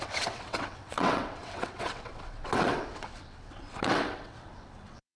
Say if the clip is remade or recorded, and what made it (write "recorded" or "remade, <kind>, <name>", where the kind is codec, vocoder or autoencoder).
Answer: remade, vocoder, WaveNeXt